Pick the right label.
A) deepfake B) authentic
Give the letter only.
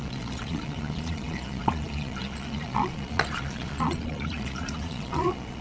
A